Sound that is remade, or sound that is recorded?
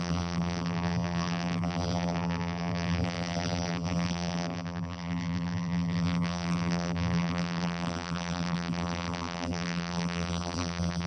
remade